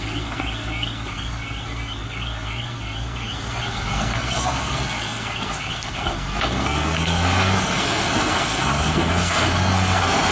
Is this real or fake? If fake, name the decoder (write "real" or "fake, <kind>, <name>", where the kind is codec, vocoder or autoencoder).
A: fake, codec, SNAC